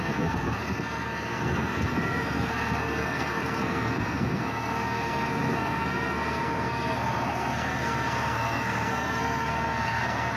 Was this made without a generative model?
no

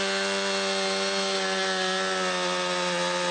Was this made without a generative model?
yes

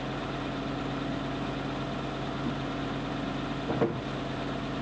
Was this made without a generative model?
yes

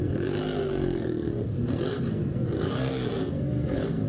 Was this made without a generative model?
no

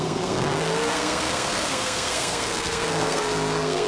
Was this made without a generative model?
no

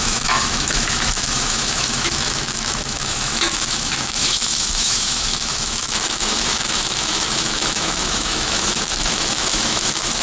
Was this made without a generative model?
no